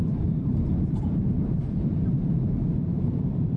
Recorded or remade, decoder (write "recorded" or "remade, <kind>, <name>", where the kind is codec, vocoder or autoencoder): remade, vocoder, BigVGAN v2